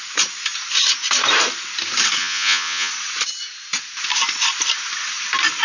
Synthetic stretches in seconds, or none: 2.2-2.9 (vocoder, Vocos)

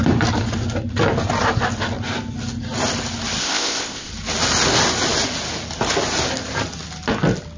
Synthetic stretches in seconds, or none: 3.4-4.1 (codec, ZipCodec)